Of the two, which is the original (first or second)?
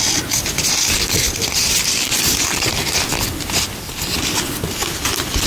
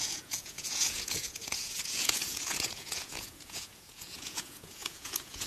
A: first